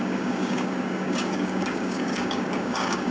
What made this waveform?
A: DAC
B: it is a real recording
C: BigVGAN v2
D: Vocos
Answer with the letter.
A